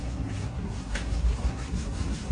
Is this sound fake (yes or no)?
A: yes